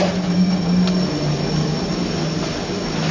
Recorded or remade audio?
recorded